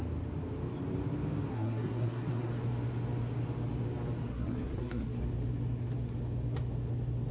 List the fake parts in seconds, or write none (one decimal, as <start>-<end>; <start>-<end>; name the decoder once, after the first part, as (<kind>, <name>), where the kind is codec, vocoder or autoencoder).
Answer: 1.5-2.5 (codec, SNAC); 4.3-5.2